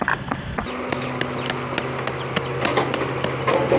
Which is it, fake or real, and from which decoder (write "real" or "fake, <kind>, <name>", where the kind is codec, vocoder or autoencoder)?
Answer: real